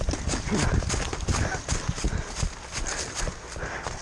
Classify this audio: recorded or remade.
recorded